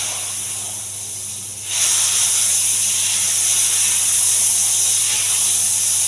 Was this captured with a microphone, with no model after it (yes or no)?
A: yes